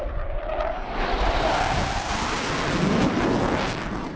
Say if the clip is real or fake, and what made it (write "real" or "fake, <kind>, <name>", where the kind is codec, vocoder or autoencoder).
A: real